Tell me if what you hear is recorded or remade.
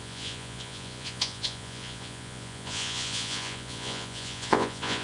remade